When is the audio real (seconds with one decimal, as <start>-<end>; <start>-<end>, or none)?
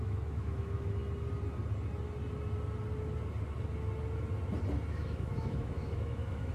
1.0-4.9